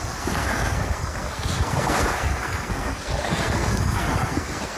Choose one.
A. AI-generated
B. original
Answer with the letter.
A